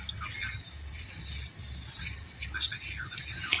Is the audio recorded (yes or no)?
yes